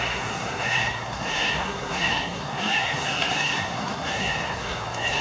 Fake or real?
fake